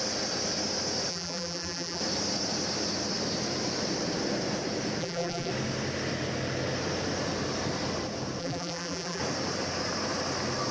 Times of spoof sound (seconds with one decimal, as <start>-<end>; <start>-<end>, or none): 1.1-2.0; 5.0-5.5; 8.4-9.2